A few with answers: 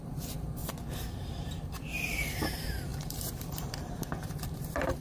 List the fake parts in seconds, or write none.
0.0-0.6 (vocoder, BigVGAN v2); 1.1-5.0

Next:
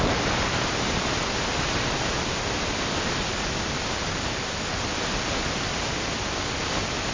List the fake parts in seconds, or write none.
5.7-6.3 (vocoder, BigVGAN v2)

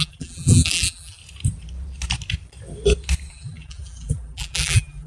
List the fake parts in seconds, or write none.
0.0-1.2 (vocoder, BigVGAN v2); 3.3-5.1

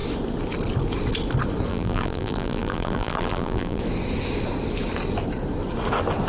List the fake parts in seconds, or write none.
1.7-3.8 (vocoder, BigVGAN v2)

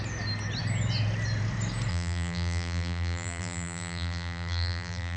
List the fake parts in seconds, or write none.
1.9-5.2 (vocoder, BigVGAN v2)

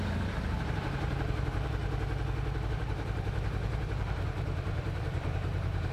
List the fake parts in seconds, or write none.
0.0-1.8 (vocoder, BigVGAN v2); 2.7-5.9